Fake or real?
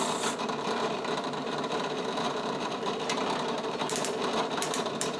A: fake